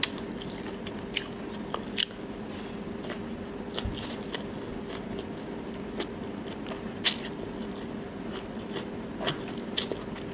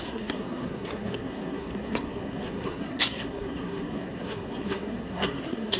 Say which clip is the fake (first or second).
second